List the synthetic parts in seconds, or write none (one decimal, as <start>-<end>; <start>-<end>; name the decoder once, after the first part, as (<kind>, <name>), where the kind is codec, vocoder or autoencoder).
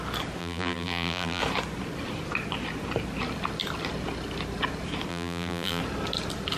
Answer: 0.4-1.4 (vocoder, BigVGAN v2); 5.1-5.8